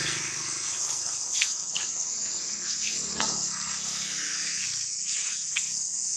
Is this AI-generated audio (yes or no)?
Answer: yes